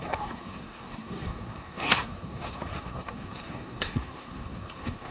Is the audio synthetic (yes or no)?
yes